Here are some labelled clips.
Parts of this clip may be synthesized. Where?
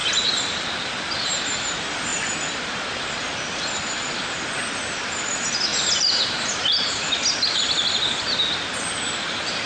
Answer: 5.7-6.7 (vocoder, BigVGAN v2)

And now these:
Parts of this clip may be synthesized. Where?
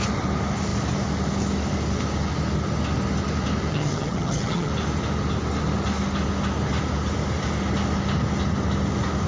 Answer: 3.7-4.7 (vocoder, HiFi-GAN)